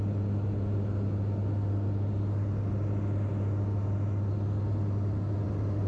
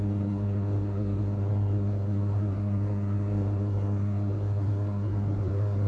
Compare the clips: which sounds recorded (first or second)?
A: first